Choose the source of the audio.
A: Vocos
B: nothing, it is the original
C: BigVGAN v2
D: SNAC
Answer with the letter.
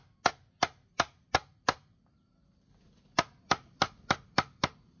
B